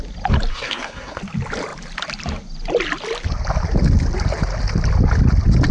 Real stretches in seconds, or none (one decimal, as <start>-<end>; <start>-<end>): 0.0-0.5; 1.2-5.7